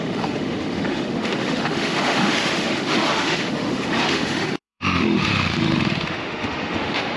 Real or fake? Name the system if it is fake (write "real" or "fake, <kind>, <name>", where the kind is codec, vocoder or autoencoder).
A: fake, autoencoder, DAC-VAE